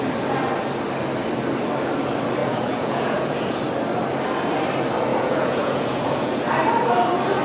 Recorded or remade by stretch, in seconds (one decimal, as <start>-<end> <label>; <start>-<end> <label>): 0.0-2.4 recorded; 2.4-3.6 remade; 3.6-5.1 recorded; 5.1-6.4 remade; 6.4-7.4 recorded